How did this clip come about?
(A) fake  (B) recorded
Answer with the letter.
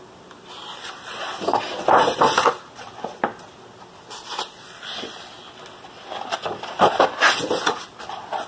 B